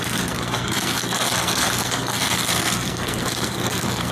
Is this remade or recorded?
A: remade